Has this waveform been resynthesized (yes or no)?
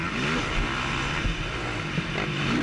no